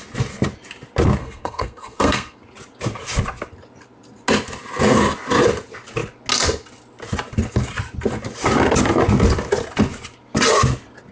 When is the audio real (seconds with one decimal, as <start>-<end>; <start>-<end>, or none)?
0.0-1.2; 2.4-11.1